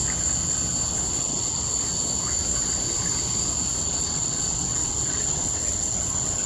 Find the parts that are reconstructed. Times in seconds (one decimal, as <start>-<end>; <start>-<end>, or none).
1.1-1.7; 3.8-6.5